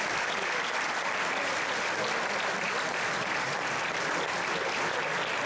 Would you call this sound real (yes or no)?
yes